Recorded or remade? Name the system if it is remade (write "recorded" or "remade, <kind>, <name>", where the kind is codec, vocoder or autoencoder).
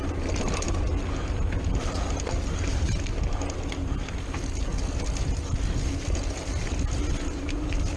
recorded